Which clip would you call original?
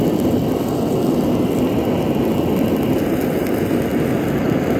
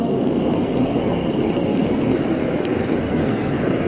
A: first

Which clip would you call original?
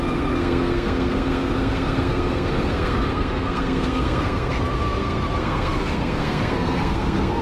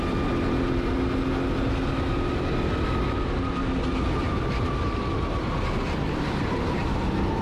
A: second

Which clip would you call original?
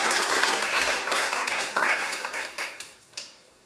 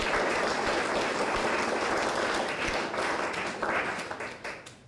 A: second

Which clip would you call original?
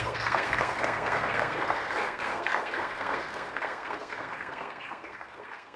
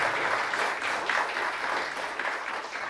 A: second